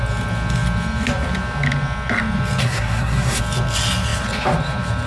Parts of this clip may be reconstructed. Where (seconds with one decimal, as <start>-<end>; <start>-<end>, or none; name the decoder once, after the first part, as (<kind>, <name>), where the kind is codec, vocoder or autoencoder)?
2.6-3.4 (codec, SNAC)